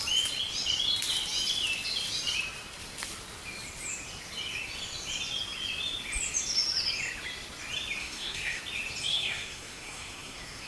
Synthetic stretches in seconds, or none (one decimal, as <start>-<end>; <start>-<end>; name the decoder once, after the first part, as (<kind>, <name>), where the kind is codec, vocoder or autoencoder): 8.0-8.6 (codec, SNAC); 9.1-10.7